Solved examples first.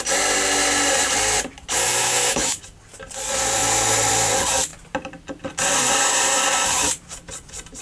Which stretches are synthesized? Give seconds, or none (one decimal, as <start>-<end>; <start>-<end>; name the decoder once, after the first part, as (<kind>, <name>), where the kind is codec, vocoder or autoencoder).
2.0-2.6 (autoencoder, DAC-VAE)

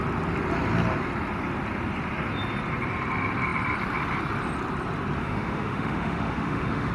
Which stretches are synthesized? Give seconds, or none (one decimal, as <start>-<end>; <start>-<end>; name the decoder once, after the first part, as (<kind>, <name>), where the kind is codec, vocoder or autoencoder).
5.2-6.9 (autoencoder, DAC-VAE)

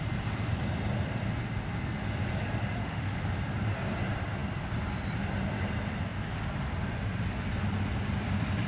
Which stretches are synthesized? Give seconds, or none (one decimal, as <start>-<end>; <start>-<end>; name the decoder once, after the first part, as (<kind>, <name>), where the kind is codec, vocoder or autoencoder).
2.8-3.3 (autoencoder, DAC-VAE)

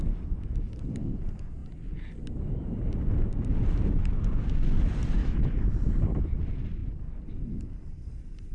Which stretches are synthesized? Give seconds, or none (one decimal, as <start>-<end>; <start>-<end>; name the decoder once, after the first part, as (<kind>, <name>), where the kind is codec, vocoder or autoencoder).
5.2-5.9 (autoencoder, DAC-VAE)